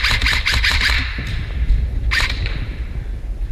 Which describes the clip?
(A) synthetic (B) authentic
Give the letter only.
B